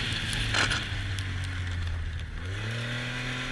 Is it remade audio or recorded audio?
recorded